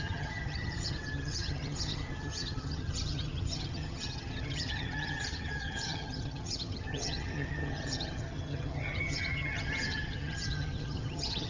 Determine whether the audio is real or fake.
fake